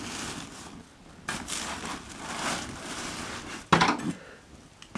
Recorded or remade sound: recorded